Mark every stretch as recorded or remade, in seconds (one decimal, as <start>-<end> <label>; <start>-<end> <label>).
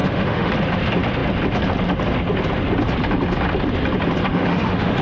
0.0-0.5 remade; 0.5-4.3 recorded; 4.3-5.0 remade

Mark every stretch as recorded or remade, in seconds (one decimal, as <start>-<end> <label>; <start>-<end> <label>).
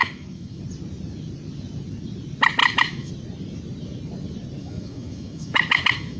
0.0-0.6 remade; 0.6-2.6 recorded; 2.6-3.1 remade; 3.1-4.6 recorded; 4.6-6.2 remade